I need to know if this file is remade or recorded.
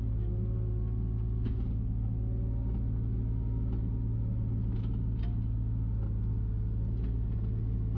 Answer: recorded